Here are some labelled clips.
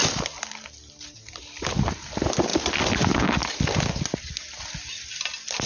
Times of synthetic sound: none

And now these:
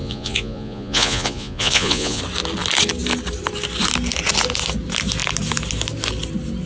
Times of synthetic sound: 0.0-2.2

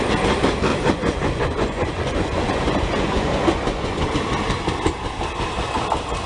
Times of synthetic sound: 0.7-4.1

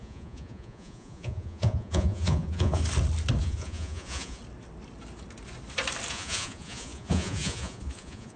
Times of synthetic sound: 0.0-2.8; 3.4-4.4; 6.1-8.4